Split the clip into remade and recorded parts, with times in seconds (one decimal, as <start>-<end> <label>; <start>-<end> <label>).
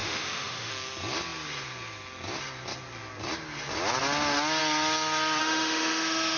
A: 0.0-0.7 remade; 0.7-5.4 recorded; 5.4-6.4 remade